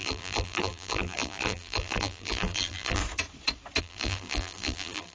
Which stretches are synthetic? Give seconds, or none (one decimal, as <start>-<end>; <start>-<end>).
0.0-3.0; 3.8-5.1